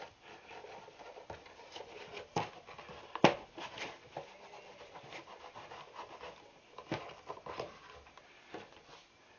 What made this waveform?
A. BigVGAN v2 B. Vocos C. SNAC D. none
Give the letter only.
D